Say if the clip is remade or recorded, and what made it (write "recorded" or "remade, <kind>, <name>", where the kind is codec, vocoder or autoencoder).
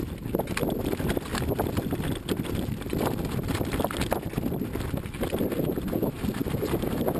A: recorded